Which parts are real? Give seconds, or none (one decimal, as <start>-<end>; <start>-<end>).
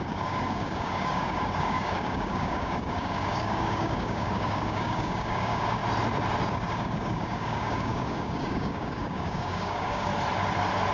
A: 5.8-6.5; 10.1-10.9